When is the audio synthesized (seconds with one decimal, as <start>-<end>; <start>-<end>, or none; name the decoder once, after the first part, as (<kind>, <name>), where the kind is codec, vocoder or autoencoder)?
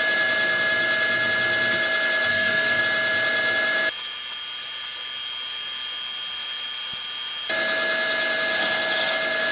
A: 2.3-2.8 (codec, SNAC)